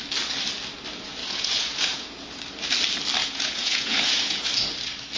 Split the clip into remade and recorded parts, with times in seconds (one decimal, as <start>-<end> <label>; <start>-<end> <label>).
0.0-1.2 recorded; 1.2-2.2 remade; 2.2-3.2 recorded; 3.2-4.5 remade; 4.5-5.2 recorded